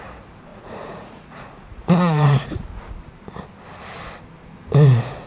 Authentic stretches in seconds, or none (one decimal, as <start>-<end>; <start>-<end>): 0.0-0.5; 2.6-5.3